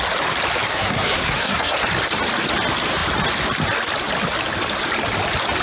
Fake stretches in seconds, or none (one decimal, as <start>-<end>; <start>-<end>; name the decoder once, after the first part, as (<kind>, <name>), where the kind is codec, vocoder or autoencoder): 0.7-1.8 (codec, SNAC)